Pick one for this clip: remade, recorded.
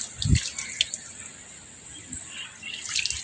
recorded